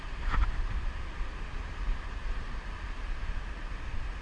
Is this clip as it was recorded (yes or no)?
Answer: yes